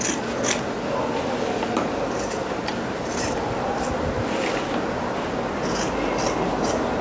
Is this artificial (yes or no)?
no